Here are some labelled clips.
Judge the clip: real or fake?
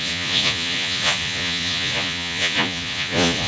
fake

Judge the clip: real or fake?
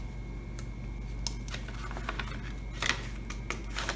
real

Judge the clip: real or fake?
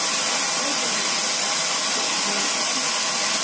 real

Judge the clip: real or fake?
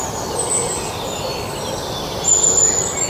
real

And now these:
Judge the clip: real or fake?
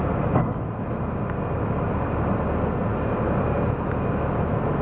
real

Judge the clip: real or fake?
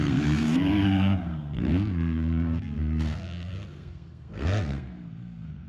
fake